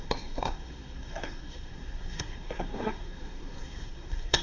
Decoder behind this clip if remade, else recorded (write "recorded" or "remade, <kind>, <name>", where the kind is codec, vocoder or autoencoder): remade, codec, SNAC